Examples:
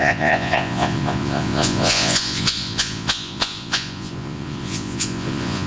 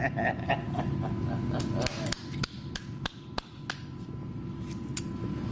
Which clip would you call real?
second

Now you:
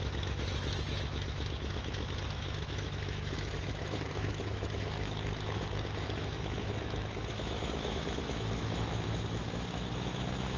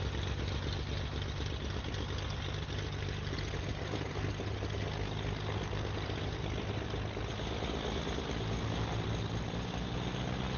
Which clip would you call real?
second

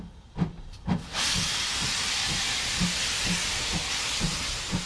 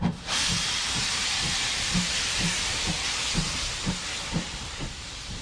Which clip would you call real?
first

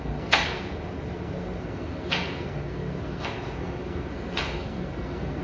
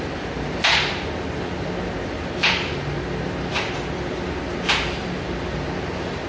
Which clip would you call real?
second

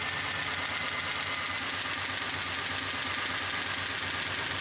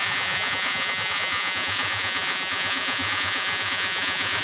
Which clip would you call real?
first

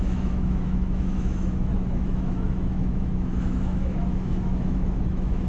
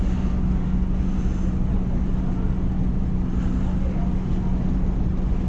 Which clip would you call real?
second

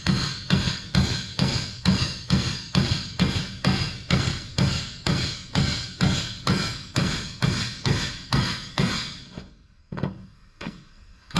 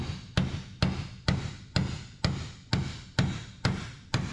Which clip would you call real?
second